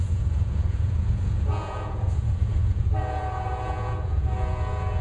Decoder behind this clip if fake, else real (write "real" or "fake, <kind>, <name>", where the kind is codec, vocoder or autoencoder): fake, vocoder, Vocos